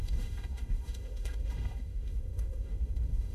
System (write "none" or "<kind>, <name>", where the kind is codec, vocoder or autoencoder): autoencoder, DAC-VAE